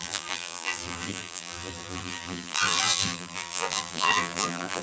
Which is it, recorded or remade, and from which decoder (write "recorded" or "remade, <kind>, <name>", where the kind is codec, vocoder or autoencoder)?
remade, vocoder, BigVGAN v2